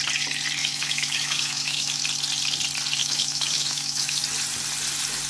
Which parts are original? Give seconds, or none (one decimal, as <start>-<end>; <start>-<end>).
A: 0.0-0.6; 2.0-3.0; 4.2-5.3